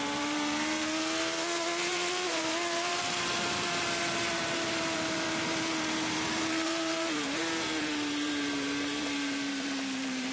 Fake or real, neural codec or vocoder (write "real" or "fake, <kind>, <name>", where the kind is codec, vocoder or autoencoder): fake, vocoder, BigVGAN v2